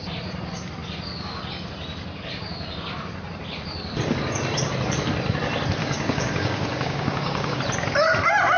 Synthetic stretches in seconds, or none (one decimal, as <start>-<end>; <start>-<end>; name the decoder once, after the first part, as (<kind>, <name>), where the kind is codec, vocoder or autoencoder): 5.8-7.6 (codec, DAC)